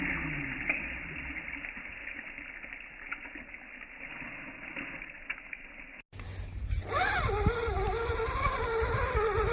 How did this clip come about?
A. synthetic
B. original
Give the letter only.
B